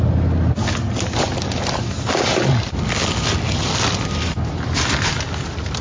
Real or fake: real